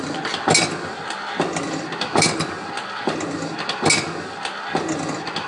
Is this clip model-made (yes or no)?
no